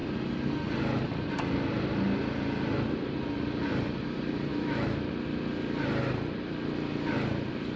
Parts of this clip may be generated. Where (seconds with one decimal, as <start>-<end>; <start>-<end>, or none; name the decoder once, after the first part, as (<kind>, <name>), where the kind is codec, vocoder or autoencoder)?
4.5-5.1 (autoencoder, DAC-VAE)